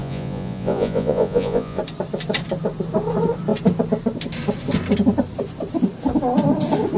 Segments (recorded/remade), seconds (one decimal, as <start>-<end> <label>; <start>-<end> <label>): 0.0-1.8 remade; 1.8-7.0 recorded